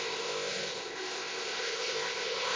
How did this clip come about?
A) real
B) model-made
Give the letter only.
B